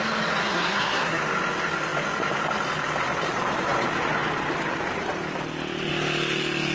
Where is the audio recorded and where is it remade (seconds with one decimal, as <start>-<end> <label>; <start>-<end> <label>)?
0.0-0.4 recorded; 0.4-1.2 remade; 1.2-6.7 recorded